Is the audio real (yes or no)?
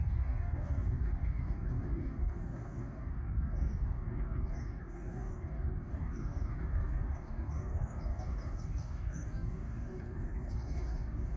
no